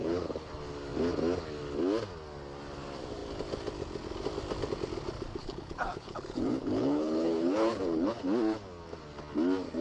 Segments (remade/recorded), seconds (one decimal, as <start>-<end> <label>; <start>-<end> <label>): 0.0-0.5 remade; 0.5-5.4 recorded; 5.4-8.2 remade; 8.2-9.8 recorded